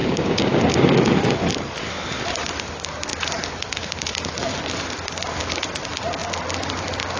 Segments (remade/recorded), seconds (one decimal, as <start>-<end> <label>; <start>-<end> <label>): 0.0-1.0 remade; 1.0-7.2 recorded